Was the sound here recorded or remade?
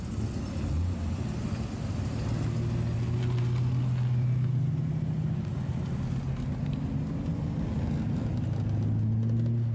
recorded